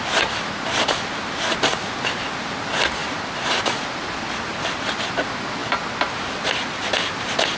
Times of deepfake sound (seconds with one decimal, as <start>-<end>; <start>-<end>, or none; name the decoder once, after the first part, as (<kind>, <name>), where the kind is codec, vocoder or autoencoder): none